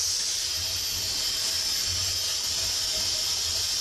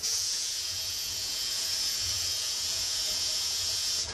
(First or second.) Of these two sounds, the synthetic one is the second